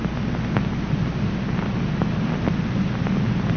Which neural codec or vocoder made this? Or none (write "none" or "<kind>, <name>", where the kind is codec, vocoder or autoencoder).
none